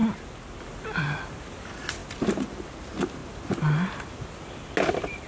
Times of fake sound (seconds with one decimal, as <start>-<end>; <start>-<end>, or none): none